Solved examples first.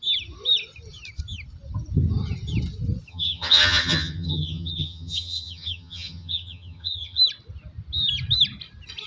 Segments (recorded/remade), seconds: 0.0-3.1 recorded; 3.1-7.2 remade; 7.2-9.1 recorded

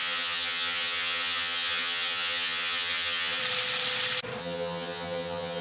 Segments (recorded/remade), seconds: 0.0-3.4 remade; 3.4-4.4 recorded; 4.4-5.6 remade

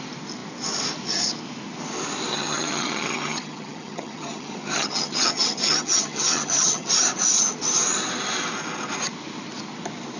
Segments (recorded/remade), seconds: 0.0-2.3 recorded; 2.3-6.9 remade; 6.9-10.2 recorded

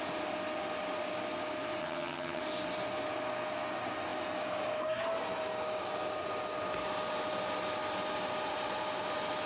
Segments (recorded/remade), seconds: 0.0-1.8 recorded; 1.8-2.4 remade; 2.4-9.5 recorded

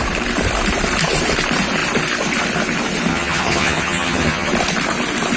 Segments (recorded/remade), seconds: 0.0-3.1 recorded; 3.1-4.5 remade; 4.5-5.4 recorded

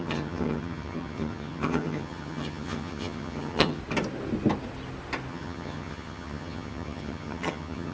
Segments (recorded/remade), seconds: 0.0-3.8 remade; 3.8-5.3 recorded; 5.3-7.9 remade

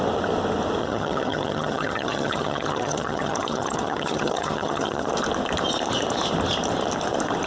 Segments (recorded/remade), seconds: 0.0-0.8 recorded; 0.8-5.1 remade; 5.1-7.5 recorded

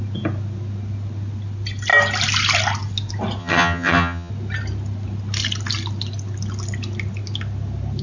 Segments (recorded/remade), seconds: 0.0-3.4 recorded; 3.4-4.3 remade; 4.3-8.0 recorded